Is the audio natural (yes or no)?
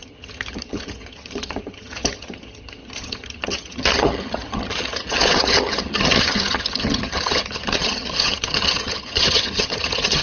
no